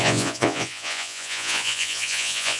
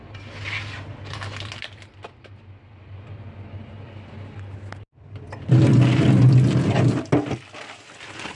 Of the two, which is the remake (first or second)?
first